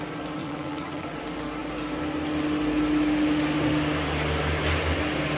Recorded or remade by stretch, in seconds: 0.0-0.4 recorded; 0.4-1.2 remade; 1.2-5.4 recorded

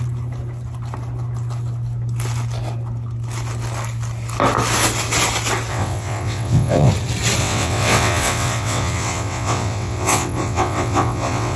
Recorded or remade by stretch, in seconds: 0.0-5.7 recorded; 5.7-6.9 remade; 6.9-7.4 recorded; 7.4-11.6 remade

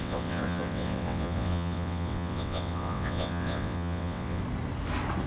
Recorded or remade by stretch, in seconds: 0.0-4.4 remade; 4.4-5.3 recorded

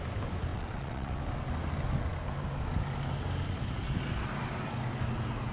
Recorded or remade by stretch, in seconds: 0.0-0.5 recorded; 0.5-1.2 remade; 1.2-5.5 recorded

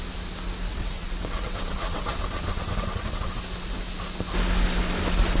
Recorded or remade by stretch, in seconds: 0.0-0.7 recorded; 0.7-3.4 remade; 3.4-5.4 recorded

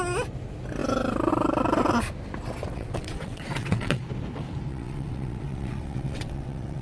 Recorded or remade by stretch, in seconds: 0.0-2.7 recorded; 2.7-4.0 remade; 4.0-4.7 recorded; 4.7-6.8 remade

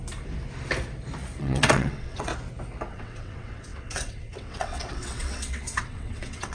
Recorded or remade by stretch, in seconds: 0.0-1.4 recorded; 1.4-2.3 remade; 2.3-2.9 recorded; 2.9-6.5 remade